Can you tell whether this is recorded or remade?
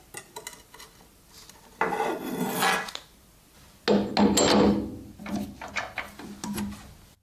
recorded